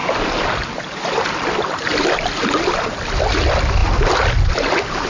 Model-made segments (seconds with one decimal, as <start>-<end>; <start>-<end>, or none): none